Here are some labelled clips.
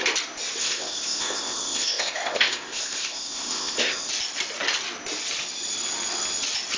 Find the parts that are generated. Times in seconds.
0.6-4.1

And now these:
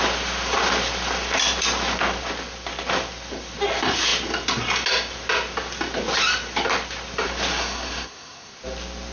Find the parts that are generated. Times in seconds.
7.5-8.5

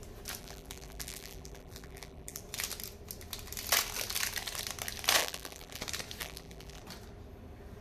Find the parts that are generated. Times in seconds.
0.4-2.4; 5.2-5.8; 6.2-6.8

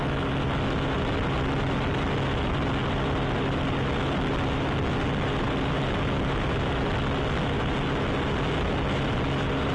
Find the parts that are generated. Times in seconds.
none

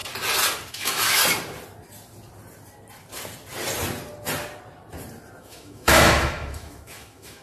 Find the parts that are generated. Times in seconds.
0.7-1.2; 5.4-7.4